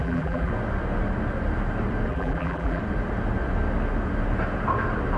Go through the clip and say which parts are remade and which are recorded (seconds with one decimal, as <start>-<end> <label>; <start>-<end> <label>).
0.0-0.5 remade; 0.5-2.1 recorded; 2.1-2.8 remade; 2.8-5.2 recorded